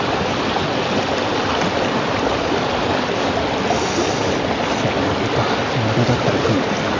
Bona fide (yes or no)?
yes